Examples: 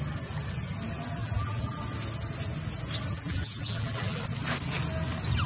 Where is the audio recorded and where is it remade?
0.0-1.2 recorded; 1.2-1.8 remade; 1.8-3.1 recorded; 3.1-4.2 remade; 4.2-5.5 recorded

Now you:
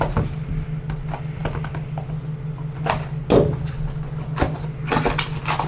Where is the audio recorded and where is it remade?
0.0-5.7 recorded

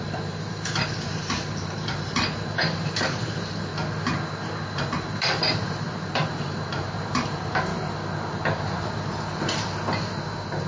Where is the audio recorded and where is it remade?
0.0-3.7 remade; 3.7-4.4 recorded; 4.4-7.7 remade; 7.7-10.7 recorded

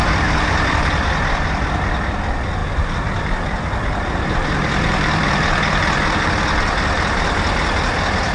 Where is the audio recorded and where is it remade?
0.0-0.8 remade; 0.8-2.6 recorded; 2.6-6.3 remade; 6.3-8.3 recorded